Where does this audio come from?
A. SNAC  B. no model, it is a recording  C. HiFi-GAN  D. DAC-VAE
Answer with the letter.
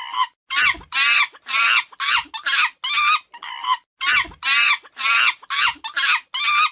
B